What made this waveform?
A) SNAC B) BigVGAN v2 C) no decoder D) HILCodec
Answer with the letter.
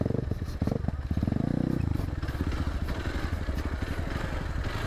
C